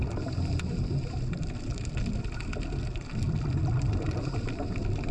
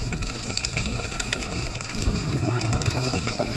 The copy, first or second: second